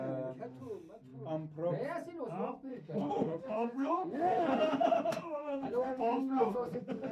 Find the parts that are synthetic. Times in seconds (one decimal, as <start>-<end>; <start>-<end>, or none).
2.7-7.1